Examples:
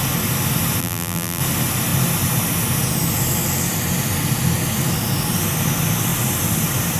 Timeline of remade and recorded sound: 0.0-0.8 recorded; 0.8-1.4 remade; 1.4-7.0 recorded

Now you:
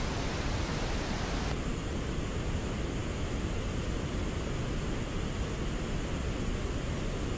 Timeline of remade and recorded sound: 0.0-7.4 recorded